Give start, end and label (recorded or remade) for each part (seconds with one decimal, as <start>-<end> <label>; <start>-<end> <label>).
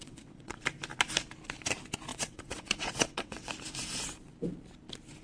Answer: 0.0-0.6 remade; 0.6-2.1 recorded; 2.1-3.5 remade; 3.5-5.2 recorded